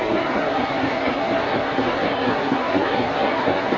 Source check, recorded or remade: remade